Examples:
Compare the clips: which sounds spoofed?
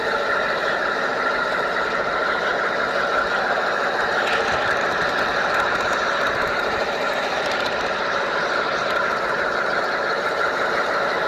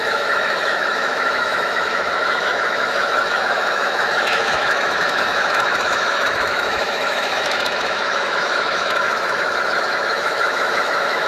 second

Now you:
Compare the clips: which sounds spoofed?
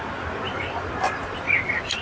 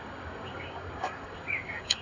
second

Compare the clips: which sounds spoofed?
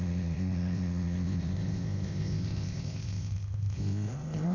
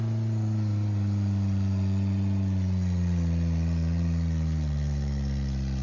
first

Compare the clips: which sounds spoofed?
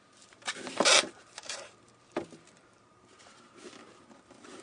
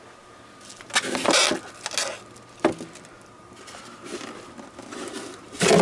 first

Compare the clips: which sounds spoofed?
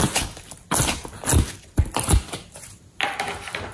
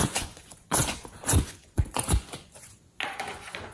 second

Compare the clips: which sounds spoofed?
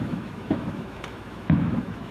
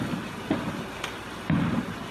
first